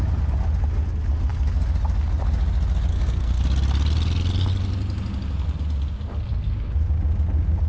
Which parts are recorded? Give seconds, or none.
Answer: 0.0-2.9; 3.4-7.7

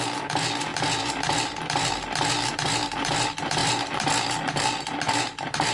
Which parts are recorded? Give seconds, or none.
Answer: 0.0-5.7

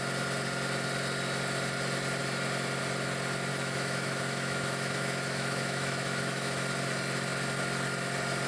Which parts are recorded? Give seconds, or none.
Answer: 0.0-3.5; 6.6-8.5